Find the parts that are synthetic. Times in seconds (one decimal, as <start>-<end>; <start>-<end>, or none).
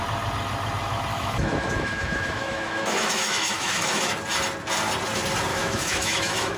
1.1-4.1; 5.5-6.6